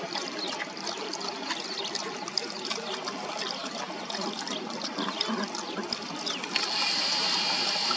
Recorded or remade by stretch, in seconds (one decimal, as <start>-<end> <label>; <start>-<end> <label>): 0.0-8.0 recorded